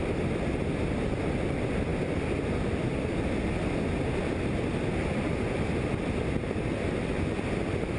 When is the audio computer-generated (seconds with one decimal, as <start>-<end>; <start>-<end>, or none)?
none